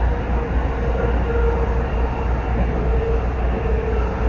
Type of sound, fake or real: real